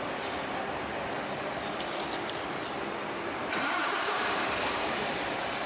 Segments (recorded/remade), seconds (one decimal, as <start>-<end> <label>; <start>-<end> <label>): 0.0-3.4 recorded; 3.4-5.1 remade; 5.1-5.7 recorded